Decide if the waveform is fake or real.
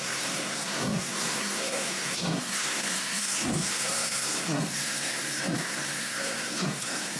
fake